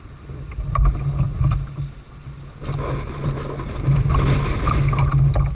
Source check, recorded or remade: recorded